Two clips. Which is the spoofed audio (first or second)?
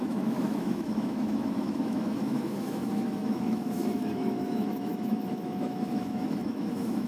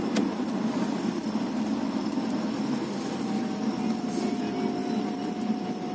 first